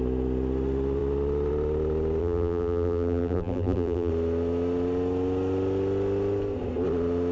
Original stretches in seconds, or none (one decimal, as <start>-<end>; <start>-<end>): 0.0-2.2; 4.1-7.3